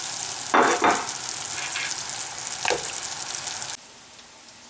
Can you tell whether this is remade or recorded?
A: recorded